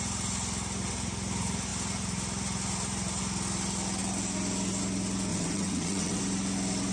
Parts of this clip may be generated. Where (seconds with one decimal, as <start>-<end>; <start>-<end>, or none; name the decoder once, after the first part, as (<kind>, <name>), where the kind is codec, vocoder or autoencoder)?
5.3-6.2 (vocoder, WaveNeXt)